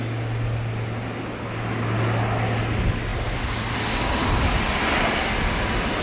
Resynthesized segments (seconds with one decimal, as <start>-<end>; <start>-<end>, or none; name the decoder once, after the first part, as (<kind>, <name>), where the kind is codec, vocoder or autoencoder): none